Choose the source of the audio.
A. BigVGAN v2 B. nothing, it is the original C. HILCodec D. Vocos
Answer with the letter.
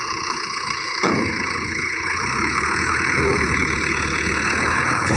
C